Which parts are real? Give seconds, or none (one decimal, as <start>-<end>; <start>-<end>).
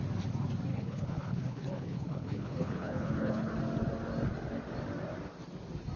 0.0-0.7; 3.5-6.0